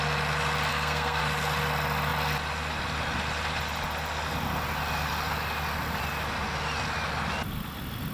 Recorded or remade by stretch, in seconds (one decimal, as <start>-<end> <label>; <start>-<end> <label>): 0.0-0.7 recorded; 0.7-1.2 remade; 1.2-8.1 recorded